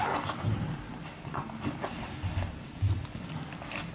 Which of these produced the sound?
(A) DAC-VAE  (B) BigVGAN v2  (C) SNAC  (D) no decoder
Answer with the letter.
B